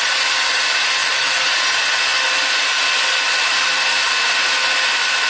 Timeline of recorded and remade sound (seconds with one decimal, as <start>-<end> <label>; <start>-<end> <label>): 0.0-1.0 recorded; 1.0-1.6 remade; 1.6-5.3 recorded